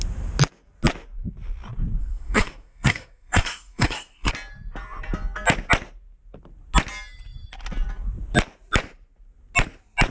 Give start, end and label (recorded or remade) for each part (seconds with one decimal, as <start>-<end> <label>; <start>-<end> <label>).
0.0-2.0 recorded; 2.0-4.3 remade; 4.3-10.1 recorded